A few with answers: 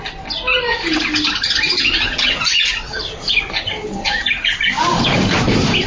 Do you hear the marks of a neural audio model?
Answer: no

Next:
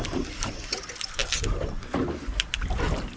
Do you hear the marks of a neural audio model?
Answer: no